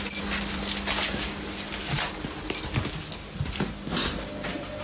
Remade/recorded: recorded